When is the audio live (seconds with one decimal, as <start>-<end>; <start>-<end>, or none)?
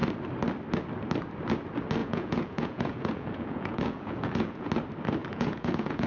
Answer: 0.0-2.0; 4.7-5.2